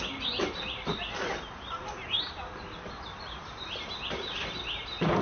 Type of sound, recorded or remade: recorded